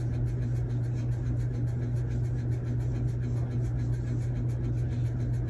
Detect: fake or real real